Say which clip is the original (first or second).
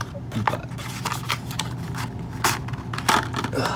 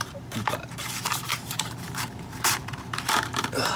first